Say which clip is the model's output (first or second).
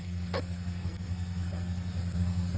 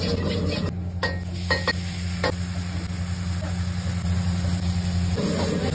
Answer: first